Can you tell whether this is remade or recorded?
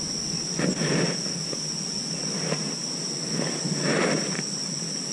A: recorded